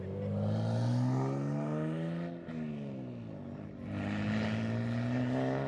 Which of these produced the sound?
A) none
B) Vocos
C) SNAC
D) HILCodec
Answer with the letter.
A